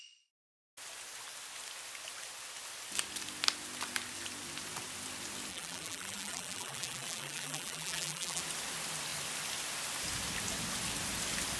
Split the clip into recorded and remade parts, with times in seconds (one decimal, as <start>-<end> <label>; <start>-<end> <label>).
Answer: 0.0-5.5 recorded; 5.5-8.4 remade; 8.4-11.6 recorded